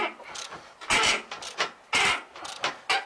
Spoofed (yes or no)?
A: no